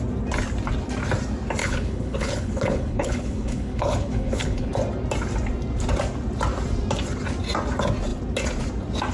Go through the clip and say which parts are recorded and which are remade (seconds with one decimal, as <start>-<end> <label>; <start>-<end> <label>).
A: 0.0-1.6 recorded; 1.6-4.7 remade; 4.7-9.1 recorded